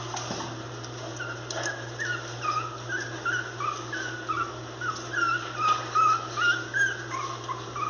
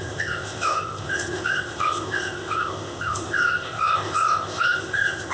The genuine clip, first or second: first